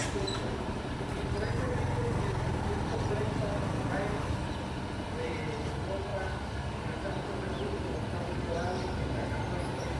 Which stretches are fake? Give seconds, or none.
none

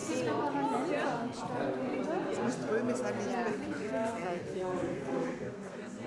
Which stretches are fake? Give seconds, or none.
3.5-6.1 (codec, SNAC)

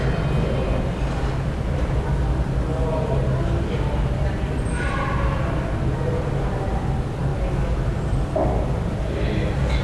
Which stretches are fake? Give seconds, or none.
none

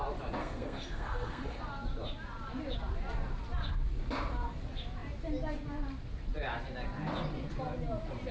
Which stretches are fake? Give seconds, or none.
0.4-1.6 (codec, SNAC)

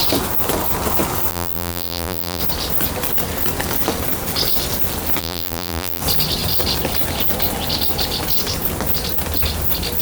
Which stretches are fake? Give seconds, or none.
1.3-2.4 (vocoder, BigVGAN v2); 5.2-6.0